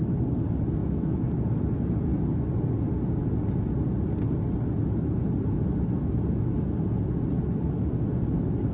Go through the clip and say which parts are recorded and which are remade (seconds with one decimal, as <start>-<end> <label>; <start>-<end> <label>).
0.0-0.8 recorded; 0.8-1.3 remade; 1.3-8.7 recorded